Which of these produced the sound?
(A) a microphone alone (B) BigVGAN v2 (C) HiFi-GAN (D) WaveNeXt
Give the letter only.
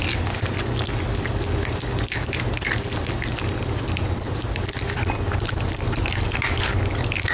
A